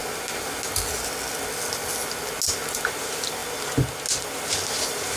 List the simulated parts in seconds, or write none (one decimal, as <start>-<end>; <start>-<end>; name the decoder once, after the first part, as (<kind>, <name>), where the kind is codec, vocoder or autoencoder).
none